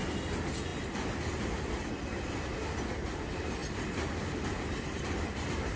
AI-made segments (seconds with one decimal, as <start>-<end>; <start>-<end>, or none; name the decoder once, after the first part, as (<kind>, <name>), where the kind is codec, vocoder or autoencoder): 0.0-3.6 (vocoder, BigVGAN v2); 5.0-5.8